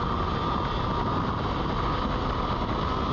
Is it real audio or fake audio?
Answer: real